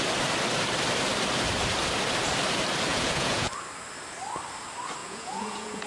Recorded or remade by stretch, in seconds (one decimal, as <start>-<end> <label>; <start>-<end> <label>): 0.0-2.9 recorded; 2.9-3.5 remade; 3.5-5.0 recorded; 5.0-5.9 remade